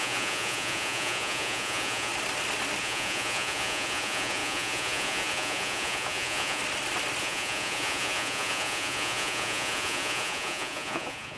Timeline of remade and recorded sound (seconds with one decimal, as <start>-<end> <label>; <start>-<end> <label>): 0.0-2.1 remade; 2.1-2.8 recorded; 2.8-6.6 remade; 6.6-7.2 recorded; 7.2-11.4 remade